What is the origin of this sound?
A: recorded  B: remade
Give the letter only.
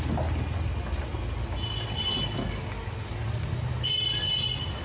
A